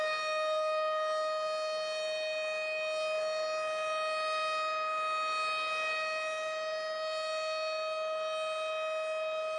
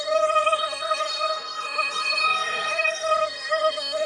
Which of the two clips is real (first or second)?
first